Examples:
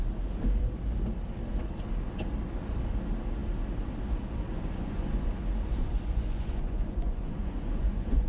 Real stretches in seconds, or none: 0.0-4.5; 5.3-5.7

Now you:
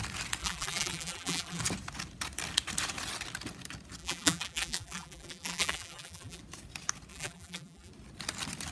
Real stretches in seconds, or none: 0.0-0.4; 1.6-4.0; 6.4-7.1; 7.9-8.7

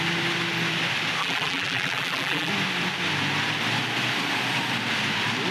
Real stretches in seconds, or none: 0.0-1.2; 2.5-5.5

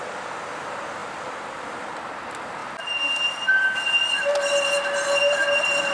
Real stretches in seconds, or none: 0.0-1.0; 2.2-5.9